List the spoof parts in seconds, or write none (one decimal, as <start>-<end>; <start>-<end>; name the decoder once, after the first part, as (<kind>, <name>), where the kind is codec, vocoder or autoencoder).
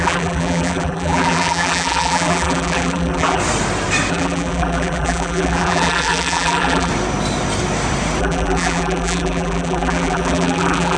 0.0-3.4 (vocoder, BigVGAN v2); 4.1-6.9; 8.2-11.0